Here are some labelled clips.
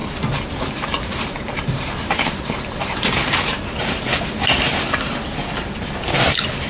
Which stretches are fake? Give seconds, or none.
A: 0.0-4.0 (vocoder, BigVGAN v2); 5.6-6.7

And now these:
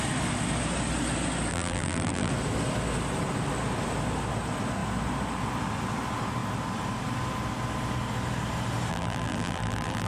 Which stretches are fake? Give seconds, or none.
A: 1.5-2.3 (vocoder, BigVGAN v2); 8.9-10.1

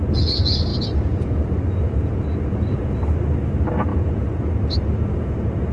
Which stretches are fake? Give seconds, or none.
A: 0.7-2.8 (vocoder, Vocos); 3.9-4.5

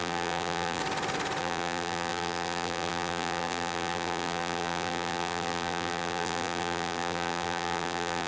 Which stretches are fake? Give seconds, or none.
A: 0.0-0.8 (vocoder, BigVGAN v2); 1.4-8.3